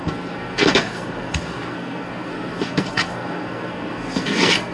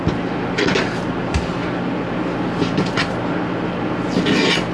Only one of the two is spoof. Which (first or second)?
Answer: first